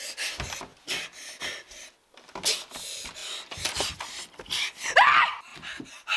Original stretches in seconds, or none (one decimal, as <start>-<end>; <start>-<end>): 0.0-6.2